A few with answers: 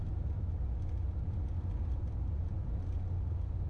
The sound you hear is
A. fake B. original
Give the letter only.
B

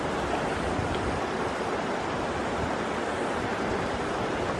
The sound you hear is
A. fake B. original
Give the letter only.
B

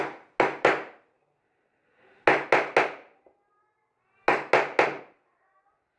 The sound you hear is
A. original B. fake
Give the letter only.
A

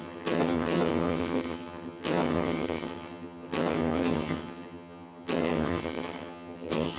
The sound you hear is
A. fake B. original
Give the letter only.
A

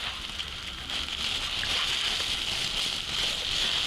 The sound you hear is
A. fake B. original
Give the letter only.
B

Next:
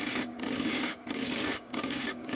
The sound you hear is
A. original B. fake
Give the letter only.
B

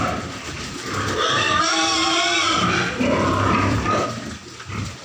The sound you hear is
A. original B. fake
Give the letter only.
B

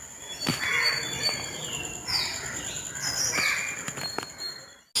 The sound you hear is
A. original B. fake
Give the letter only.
A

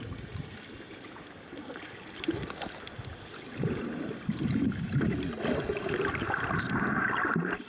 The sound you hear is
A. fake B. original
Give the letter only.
B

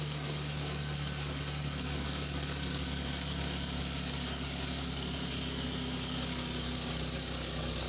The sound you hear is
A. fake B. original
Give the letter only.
A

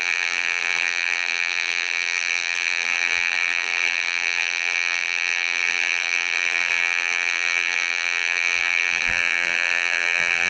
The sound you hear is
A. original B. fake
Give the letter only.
B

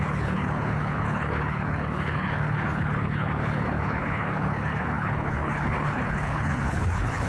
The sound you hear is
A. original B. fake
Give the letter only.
B